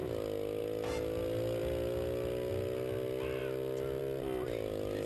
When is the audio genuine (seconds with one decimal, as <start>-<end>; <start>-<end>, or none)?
0.0-5.1